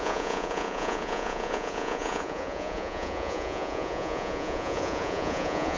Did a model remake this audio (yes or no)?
yes